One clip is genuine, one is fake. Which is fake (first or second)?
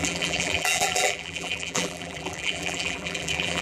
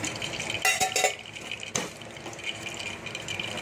first